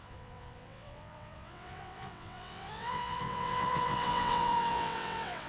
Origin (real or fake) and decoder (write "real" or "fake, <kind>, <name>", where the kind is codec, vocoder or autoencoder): fake, vocoder, WaveNeXt